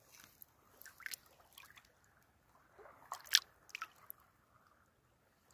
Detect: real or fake real